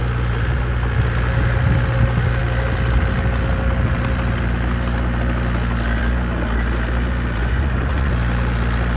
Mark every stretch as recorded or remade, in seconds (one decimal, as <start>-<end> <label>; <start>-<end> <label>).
0.0-7.4 recorded; 7.4-8.1 remade; 8.1-9.0 recorded